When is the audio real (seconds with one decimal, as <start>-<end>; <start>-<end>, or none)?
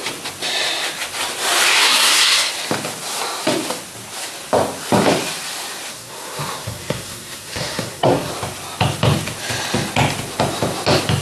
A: 0.0-1.8; 2.5-5.9; 8.3-11.2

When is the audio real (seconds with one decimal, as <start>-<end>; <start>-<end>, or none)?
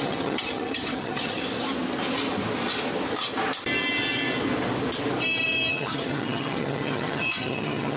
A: 1.4-5.7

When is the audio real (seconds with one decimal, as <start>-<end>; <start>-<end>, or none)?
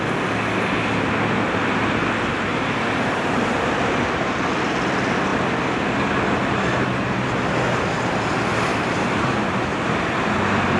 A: 0.0-2.5; 4.4-8.7; 9.3-10.8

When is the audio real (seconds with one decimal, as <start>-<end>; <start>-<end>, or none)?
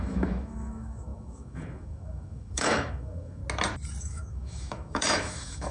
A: 3.4-4.0